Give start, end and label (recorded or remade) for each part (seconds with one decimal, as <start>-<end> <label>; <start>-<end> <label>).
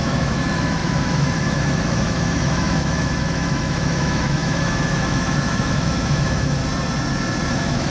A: 0.0-6.6 remade; 6.6-7.5 recorded; 7.5-7.9 remade